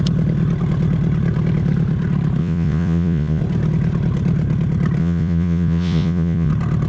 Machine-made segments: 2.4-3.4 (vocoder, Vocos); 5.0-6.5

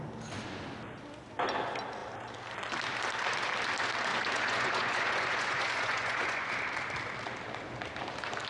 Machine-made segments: 4.1-6.5 (vocoder, Vocos)

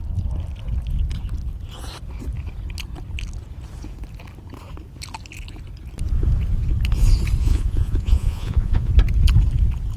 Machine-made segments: 7.4-8.9 (vocoder, Vocos)

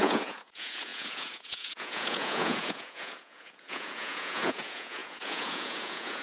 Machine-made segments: 0.0-6.2 (vocoder, Vocos)

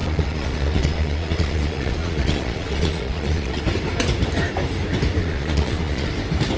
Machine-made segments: 0.0-3.6 (vocoder, Vocos); 5.2-6.1

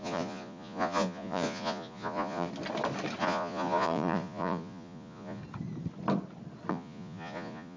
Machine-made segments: 0.0-2.5 (vocoder, Vocos); 3.2-5.4; 6.7-7.8

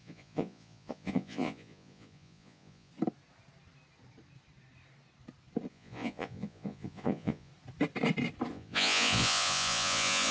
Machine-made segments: 0.0-2.9 (vocoder, Vocos); 5.7-7.5; 8.5-10.3